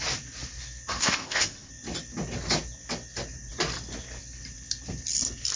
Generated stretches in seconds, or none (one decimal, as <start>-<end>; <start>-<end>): 1.0-1.7